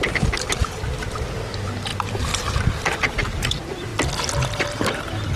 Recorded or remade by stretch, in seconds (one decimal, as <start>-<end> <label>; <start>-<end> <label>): 0.0-5.4 recorded